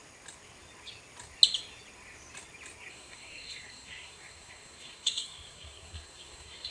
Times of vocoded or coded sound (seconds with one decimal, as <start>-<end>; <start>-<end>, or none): 2.9-6.7